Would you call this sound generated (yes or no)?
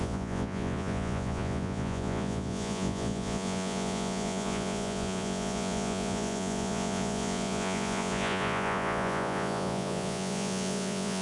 yes